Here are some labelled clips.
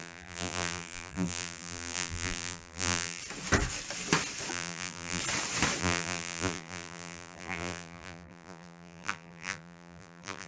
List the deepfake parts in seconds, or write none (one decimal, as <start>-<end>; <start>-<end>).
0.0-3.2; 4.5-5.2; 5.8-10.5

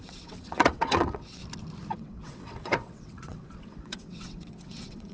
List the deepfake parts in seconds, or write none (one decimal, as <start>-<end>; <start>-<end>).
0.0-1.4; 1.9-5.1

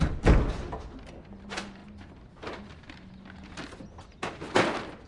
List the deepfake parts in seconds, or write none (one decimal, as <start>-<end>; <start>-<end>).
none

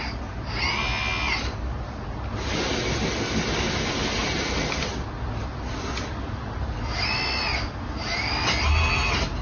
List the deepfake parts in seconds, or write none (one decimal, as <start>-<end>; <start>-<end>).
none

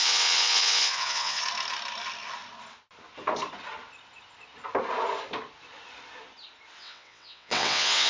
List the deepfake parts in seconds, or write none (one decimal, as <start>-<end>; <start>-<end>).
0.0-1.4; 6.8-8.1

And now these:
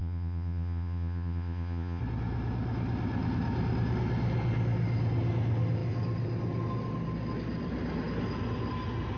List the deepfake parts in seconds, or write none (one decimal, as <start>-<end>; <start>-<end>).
0.0-2.0

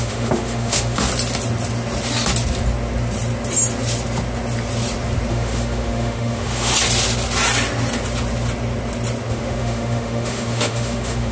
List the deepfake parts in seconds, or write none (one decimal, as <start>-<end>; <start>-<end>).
0.0-1.1; 5.3-6.7; 9.3-11.3